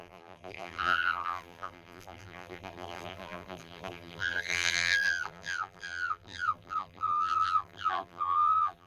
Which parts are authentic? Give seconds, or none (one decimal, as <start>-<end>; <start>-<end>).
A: none